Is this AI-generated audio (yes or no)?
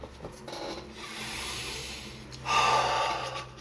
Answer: no